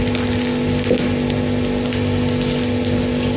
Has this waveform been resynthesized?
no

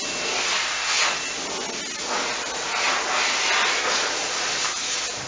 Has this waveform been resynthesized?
no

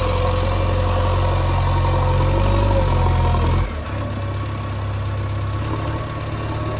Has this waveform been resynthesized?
no